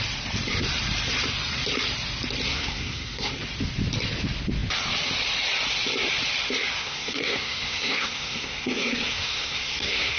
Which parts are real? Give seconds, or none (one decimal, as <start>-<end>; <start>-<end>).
0.0-2.5; 3.3-6.8